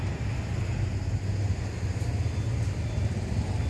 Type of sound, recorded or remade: recorded